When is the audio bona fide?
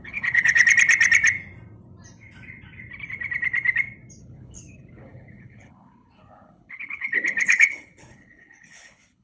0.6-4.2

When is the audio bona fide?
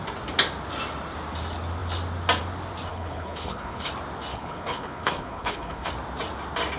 0.0-2.9; 3.9-4.3; 5.9-6.8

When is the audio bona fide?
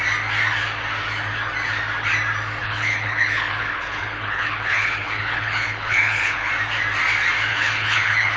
0.0-2.6; 6.5-7.5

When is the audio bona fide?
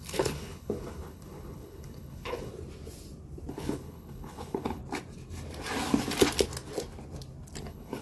2.5-3.5; 4.8-7.6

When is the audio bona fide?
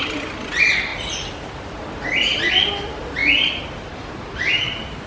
0.0-5.1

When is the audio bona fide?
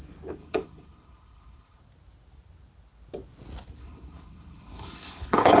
0.0-0.4; 1.8-3.8